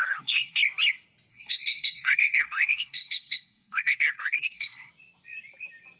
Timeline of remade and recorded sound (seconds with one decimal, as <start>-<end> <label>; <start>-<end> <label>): 0.0-0.6 remade; 0.6-1.3 recorded; 1.3-4.9 remade; 4.9-6.0 recorded